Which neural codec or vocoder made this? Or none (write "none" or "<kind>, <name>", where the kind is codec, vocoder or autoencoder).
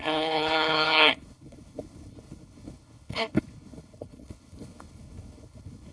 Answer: codec, HILCodec